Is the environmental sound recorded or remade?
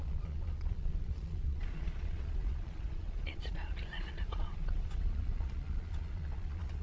remade